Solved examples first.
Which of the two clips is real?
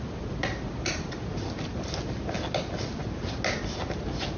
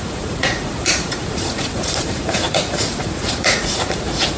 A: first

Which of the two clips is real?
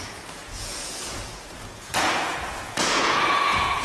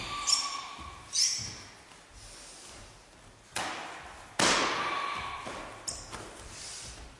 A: second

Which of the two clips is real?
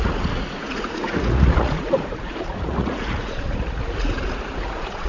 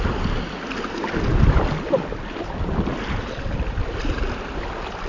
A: second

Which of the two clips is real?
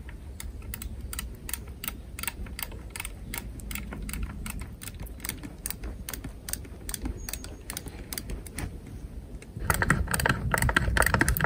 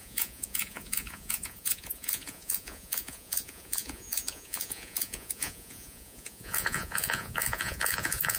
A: first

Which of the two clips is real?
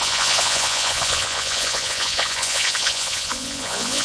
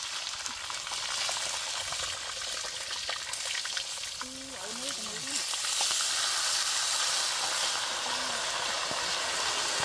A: second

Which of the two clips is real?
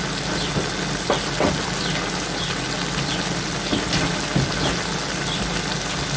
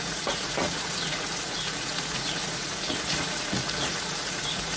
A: first